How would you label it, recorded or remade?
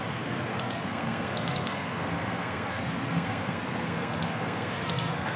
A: remade